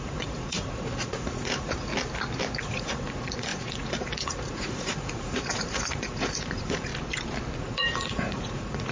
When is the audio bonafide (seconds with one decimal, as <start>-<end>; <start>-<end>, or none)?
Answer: 1.9-2.6; 6.9-7.6

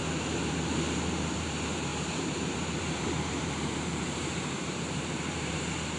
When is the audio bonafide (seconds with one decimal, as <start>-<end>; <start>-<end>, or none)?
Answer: 0.0-1.9; 5.5-6.0

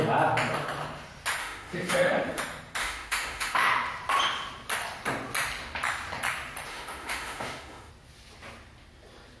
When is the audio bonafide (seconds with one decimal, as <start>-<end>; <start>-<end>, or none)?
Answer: 0.0-1.4; 2.4-2.8; 3.7-6.7; 7.9-9.4